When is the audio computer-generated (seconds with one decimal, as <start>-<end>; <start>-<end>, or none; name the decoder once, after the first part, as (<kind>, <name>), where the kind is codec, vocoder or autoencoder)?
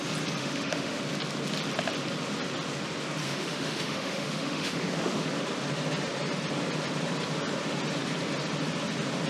0.4-1.0 (autoencoder, DAC-VAE); 3.2-5.3